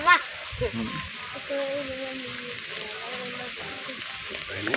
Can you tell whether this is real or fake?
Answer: fake